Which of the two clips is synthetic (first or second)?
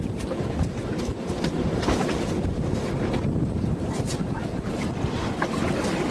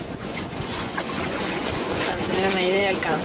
second